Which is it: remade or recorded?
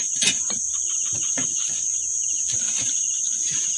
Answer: recorded